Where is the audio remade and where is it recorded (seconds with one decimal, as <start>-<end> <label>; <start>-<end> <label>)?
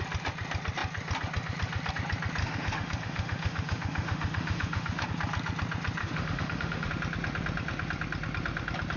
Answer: 0.0-2.4 recorded; 2.4-5.1 remade; 5.1-6.0 recorded; 6.0-6.9 remade; 6.9-9.0 recorded